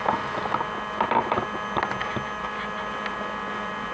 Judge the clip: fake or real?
real